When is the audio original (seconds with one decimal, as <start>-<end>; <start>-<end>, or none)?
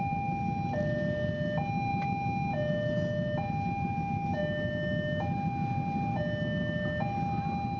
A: 0.0-7.8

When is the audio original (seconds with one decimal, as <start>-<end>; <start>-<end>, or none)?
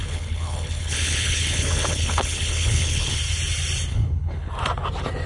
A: 3.2-3.9; 4.5-5.3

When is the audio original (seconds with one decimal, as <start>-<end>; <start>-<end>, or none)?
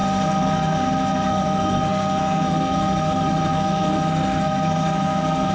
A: none